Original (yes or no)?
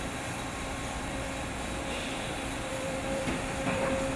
no